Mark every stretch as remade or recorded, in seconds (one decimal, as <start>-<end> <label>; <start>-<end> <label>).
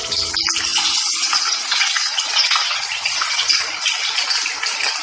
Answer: 0.0-0.7 recorded; 0.7-3.7 remade; 3.7-5.0 recorded